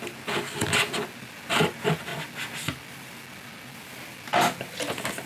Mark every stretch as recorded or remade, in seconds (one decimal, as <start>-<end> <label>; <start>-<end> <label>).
0.0-5.3 recorded